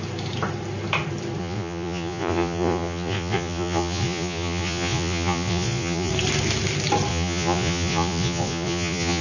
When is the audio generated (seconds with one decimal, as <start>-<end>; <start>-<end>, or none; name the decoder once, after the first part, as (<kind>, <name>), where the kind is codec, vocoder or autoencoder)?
1.4-6.1 (vocoder, Vocos); 7.1-9.2